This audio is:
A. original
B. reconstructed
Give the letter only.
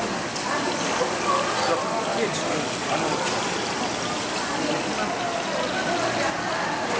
A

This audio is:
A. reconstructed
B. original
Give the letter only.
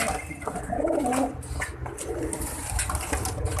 B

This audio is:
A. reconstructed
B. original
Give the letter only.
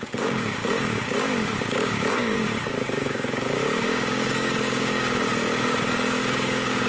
A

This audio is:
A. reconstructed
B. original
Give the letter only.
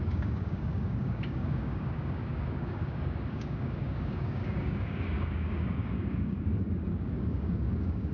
A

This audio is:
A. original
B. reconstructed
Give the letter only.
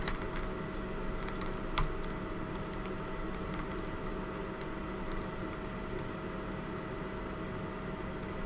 A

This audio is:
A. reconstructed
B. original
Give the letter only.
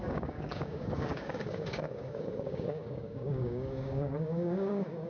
A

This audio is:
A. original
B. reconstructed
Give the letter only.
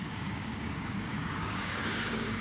B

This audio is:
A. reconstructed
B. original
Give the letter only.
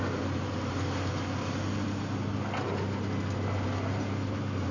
B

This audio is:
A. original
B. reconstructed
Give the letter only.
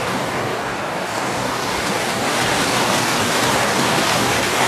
B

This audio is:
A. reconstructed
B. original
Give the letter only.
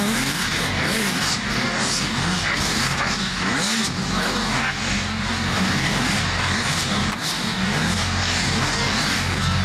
A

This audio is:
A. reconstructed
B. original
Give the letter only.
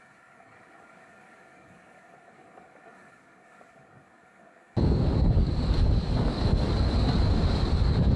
A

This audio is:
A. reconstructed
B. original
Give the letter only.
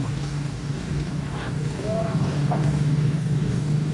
A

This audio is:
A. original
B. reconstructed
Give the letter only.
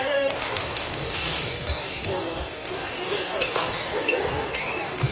B